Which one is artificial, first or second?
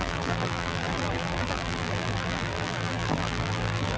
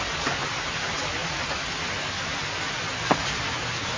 first